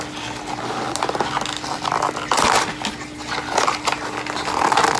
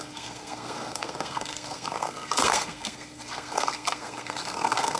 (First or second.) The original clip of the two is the first